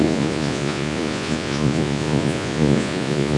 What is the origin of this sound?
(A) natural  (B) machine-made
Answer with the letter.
B